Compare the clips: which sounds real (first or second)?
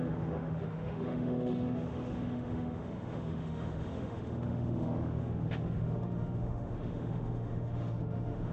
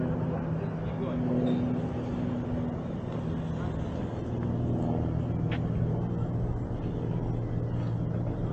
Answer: second